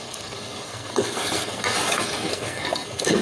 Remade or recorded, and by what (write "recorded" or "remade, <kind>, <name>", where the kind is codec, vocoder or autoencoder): remade, codec, SNAC